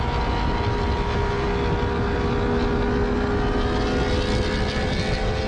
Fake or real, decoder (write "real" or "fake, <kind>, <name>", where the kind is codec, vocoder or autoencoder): real